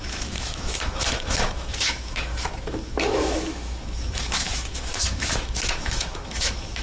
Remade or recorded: remade